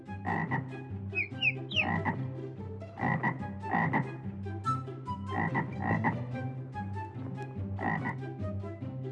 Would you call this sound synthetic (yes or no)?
no